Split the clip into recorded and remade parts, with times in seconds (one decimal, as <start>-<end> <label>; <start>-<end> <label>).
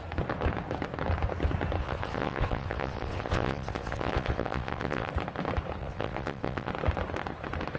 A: 0.0-1.8 recorded; 1.8-5.1 remade; 5.1-5.8 recorded; 5.8-6.7 remade; 6.7-7.8 recorded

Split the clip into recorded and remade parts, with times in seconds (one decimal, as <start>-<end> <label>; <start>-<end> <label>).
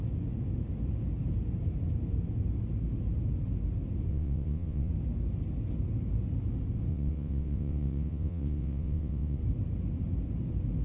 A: 0.0-4.1 recorded; 4.1-4.9 remade; 4.9-6.9 recorded; 6.9-9.4 remade; 9.4-10.8 recorded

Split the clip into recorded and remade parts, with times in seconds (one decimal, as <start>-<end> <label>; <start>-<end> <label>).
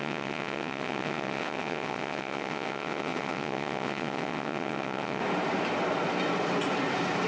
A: 0.0-5.2 remade; 5.2-7.3 recorded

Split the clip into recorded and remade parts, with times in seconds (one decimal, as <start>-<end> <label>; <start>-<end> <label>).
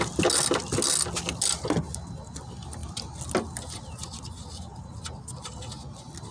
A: 0.0-6.3 recorded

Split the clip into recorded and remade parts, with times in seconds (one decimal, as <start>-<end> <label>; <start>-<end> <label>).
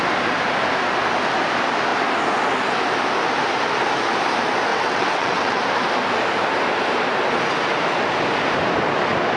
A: 0.0-4.7 recorded; 4.7-5.6 remade; 5.6-9.4 recorded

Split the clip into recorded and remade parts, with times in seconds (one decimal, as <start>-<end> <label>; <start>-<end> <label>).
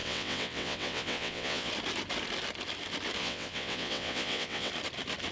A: 0.0-1.7 remade; 1.7-3.2 recorded; 3.2-4.7 remade; 4.7-5.3 recorded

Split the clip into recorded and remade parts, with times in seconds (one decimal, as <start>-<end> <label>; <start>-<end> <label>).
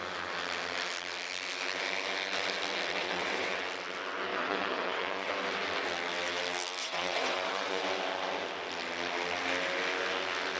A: 0.0-3.0 recorded; 3.0-3.6 remade; 3.6-4.3 recorded; 4.3-5.3 remade; 5.3-6.8 recorded; 6.8-7.8 remade; 7.8-10.6 recorded